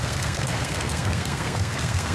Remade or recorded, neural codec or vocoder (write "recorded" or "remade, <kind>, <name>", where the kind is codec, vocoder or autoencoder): remade, codec, SNAC